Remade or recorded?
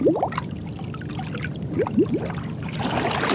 recorded